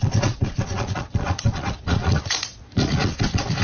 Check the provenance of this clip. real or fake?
fake